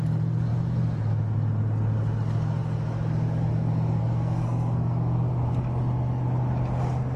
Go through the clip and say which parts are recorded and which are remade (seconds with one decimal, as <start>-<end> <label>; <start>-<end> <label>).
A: 0.0-4.0 recorded; 4.0-5.3 remade; 5.3-7.2 recorded